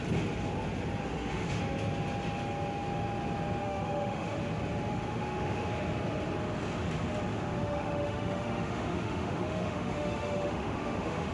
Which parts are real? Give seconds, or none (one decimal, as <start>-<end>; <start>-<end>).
0.0-1.0; 1.6-3.6; 4.4-4.9; 5.7-7.3